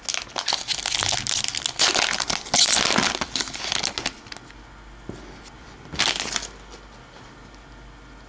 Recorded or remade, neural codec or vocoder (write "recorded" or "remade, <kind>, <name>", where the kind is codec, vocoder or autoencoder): recorded